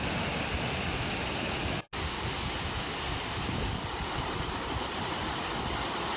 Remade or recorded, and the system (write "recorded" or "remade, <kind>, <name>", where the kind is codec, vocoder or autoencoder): recorded